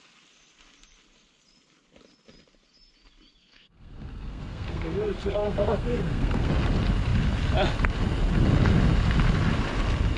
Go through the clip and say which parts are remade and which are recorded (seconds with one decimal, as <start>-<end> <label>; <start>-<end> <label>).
0.0-3.4 recorded; 3.4-6.5 remade; 6.5-10.2 recorded